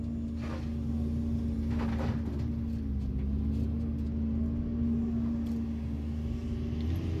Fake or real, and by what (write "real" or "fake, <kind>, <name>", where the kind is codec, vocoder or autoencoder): real